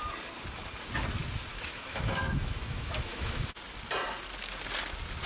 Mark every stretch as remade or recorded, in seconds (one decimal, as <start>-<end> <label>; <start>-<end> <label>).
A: 0.0-1.5 recorded; 1.5-3.6 remade; 3.6-5.3 recorded